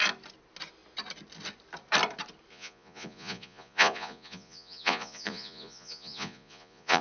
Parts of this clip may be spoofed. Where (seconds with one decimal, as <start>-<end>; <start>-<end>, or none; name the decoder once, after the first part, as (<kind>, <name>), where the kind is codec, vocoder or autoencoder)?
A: 2.5-7.0 (vocoder, Vocos)